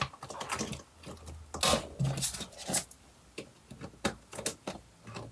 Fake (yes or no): no